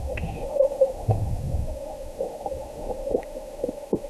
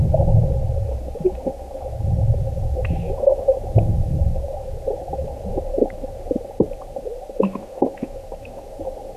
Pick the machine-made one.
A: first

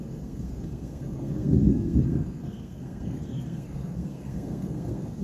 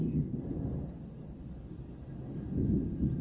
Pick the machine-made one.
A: first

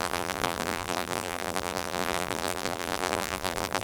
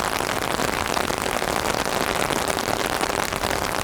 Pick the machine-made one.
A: first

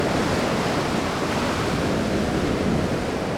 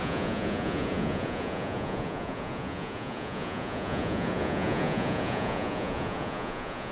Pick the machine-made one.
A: second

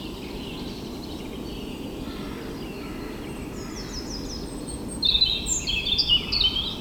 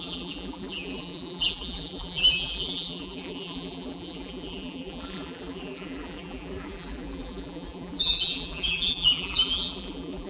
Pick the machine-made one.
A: second